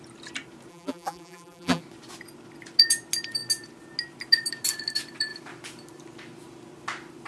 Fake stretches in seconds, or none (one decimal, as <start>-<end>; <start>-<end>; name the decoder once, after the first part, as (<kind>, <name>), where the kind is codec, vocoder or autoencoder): 0.7-1.8 (vocoder, BigVGAN v2)